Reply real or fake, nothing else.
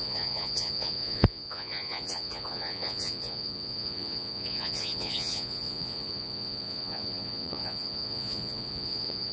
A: fake